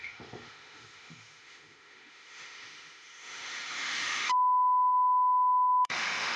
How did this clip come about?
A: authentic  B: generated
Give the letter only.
B